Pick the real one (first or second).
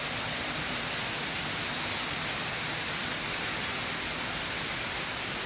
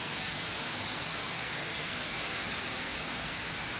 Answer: first